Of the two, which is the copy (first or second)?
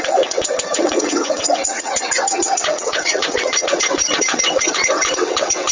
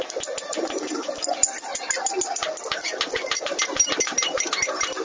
first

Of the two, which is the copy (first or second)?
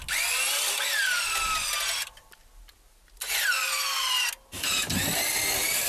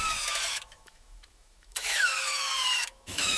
second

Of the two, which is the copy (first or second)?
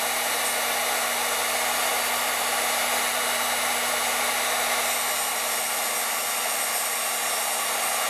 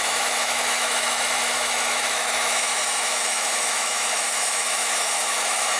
second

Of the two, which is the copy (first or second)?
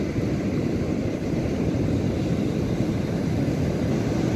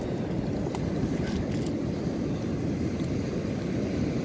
first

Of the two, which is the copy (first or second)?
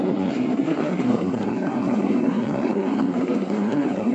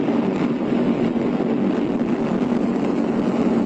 first